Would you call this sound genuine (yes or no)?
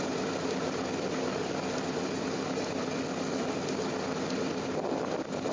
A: yes